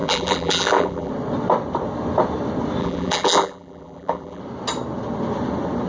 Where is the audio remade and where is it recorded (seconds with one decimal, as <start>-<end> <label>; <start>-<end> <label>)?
0.0-1.1 remade; 1.1-2.8 recorded; 2.8-4.4 remade; 4.4-5.9 recorded